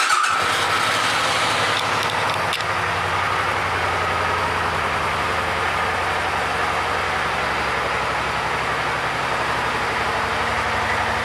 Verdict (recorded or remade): recorded